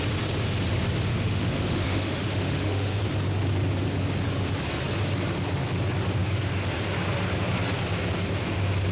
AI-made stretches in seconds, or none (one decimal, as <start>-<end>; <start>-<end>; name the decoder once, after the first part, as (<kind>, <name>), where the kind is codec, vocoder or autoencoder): 1.1-3.0 (autoencoder, DAC-VAE)